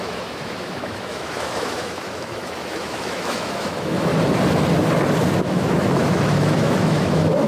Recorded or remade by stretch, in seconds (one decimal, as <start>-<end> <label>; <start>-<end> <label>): 0.0-4.1 remade; 4.1-5.4 recorded; 5.4-7.5 remade